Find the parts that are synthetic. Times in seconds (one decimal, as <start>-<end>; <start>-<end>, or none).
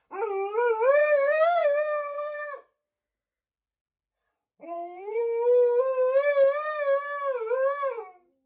1.0-2.4; 4.6-5.2